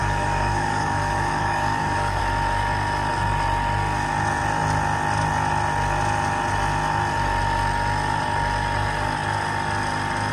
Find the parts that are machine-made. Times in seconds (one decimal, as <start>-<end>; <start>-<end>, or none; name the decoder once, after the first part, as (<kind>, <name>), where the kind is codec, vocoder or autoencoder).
0.0-2.2 (codec, DAC)

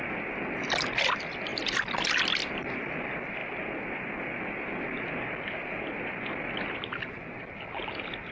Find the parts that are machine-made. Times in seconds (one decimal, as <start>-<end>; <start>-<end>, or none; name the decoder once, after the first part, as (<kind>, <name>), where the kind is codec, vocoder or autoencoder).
none